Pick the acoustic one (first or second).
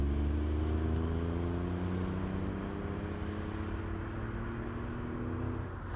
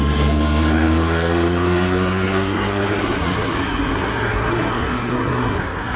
first